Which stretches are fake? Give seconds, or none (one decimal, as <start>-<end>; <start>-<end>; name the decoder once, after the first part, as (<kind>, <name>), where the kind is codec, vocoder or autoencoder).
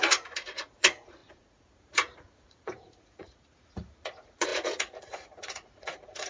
0.0-6.3 (vocoder, Vocos)